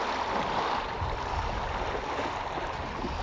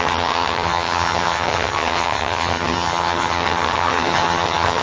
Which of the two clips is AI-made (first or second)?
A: second